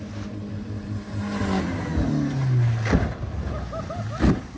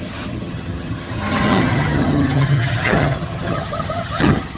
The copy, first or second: second